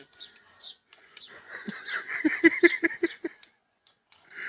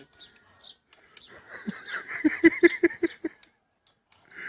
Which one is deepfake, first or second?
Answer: first